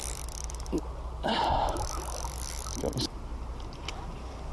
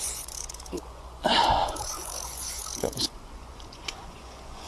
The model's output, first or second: second